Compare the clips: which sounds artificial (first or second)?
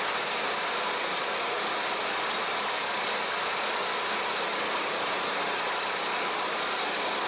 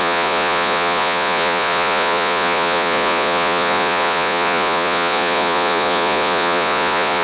second